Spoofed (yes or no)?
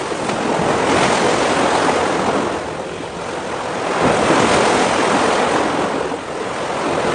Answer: no